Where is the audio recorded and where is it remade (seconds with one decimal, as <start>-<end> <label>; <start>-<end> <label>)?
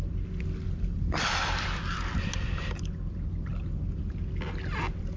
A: 0.0-5.2 recorded